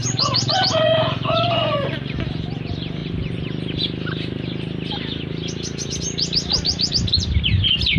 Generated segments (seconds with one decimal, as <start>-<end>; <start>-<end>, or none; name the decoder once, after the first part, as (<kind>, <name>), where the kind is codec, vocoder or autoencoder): 0.0-2.2 (vocoder, Vocos)